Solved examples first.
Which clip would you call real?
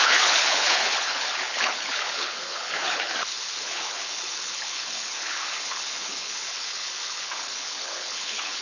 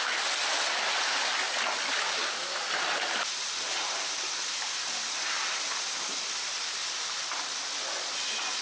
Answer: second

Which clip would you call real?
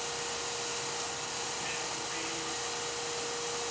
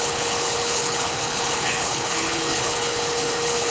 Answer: first